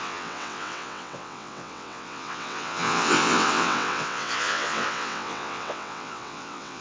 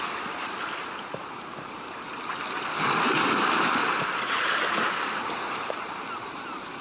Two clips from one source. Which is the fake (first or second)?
first